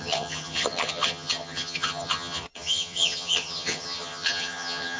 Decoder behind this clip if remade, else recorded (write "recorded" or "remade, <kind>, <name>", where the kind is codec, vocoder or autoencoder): remade, vocoder, HiFi-GAN